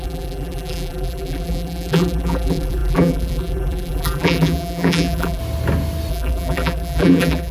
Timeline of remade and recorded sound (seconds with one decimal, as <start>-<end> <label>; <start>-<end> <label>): 0.0-5.4 remade; 5.4-6.1 recorded; 6.1-7.5 remade